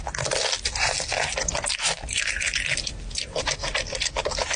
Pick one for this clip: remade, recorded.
recorded